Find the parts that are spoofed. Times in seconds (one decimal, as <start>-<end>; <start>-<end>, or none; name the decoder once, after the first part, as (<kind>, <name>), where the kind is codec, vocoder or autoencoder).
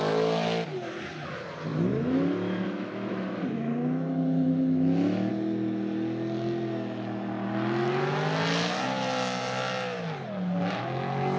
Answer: 1.7-5.3 (autoencoder, DAC-VAE)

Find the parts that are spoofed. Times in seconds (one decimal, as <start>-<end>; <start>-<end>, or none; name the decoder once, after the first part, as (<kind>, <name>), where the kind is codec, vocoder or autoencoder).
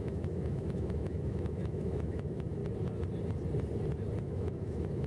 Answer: 0.0-2.6 (autoencoder, DAC-VAE); 4.2-5.1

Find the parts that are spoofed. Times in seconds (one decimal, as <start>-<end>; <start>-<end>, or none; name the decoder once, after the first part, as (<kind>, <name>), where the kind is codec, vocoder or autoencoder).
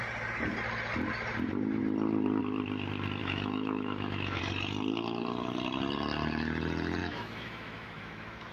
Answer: 3.2-4.4 (autoencoder, DAC-VAE); 7.0-8.5